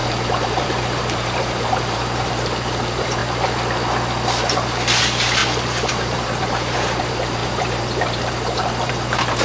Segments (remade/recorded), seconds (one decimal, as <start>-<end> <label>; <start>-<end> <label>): 0.0-3.2 remade; 3.2-5.0 recorded; 5.0-5.4 remade; 5.4-5.9 recorded; 5.9-9.4 remade